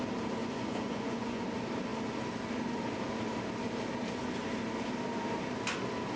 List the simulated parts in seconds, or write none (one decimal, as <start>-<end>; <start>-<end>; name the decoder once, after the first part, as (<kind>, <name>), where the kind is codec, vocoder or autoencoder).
0.4-1.4 (vocoder, Vocos)